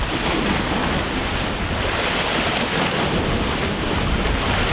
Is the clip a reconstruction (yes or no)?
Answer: no